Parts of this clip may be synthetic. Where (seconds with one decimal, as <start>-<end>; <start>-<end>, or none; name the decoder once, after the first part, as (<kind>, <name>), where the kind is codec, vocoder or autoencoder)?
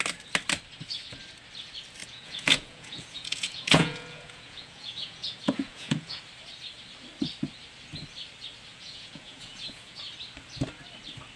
2.0-6.2 (vocoder, Vocos); 8.7-10.0